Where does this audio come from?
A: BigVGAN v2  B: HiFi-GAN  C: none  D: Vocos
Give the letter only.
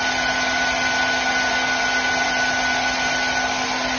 C